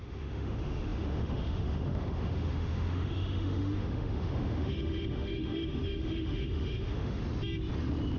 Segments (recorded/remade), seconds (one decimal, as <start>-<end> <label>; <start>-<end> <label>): 0.0-7.2 remade; 7.2-8.2 recorded